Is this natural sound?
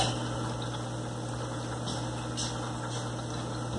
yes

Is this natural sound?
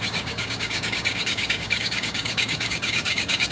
no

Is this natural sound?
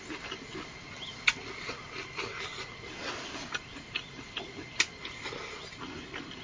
yes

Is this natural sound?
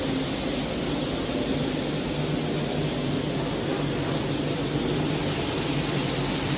yes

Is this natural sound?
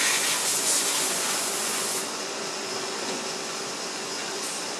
no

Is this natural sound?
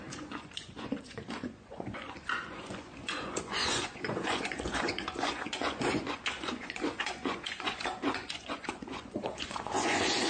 no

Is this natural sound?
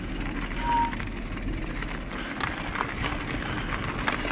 yes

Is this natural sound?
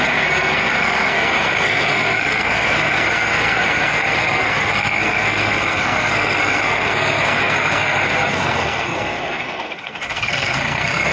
no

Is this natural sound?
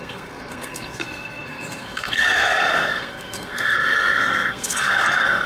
no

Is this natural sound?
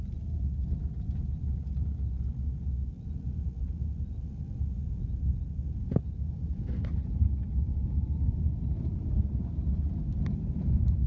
yes